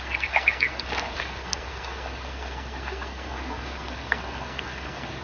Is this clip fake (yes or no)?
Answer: yes